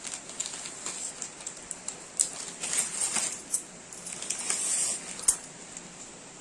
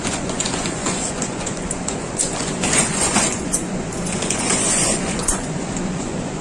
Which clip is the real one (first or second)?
first